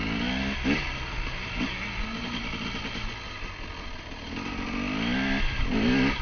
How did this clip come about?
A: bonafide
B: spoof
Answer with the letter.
A